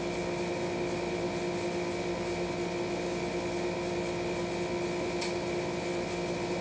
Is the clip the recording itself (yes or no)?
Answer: yes